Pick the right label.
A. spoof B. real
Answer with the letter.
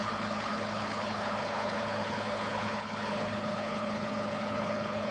A